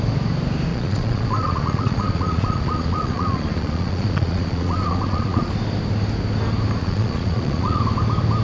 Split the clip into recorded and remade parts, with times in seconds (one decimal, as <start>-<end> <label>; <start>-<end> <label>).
0.0-0.7 recorded; 0.7-5.5 remade; 5.5-6.8 recorded; 6.8-7.8 remade; 7.8-8.4 recorded